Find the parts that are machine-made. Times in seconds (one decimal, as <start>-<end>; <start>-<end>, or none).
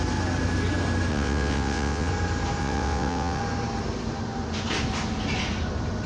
1.1-2.1; 2.6-3.4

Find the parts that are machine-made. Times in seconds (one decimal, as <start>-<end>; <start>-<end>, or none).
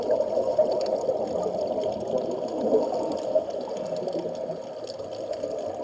none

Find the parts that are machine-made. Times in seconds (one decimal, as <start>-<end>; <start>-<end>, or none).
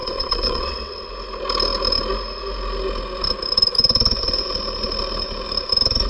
0.0-1.1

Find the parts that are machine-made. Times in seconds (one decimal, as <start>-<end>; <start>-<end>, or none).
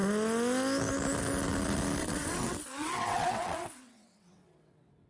2.0-5.1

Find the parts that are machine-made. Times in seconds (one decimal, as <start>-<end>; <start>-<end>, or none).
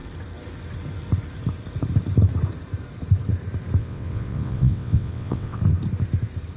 3.8-5.6